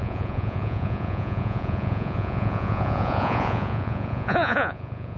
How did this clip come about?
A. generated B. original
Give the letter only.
A